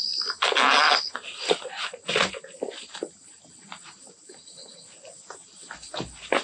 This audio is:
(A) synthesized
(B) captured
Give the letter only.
B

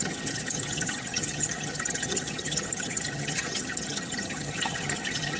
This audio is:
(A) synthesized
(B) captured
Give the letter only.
A